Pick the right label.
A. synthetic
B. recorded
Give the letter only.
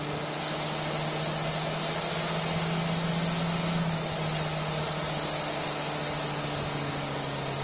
B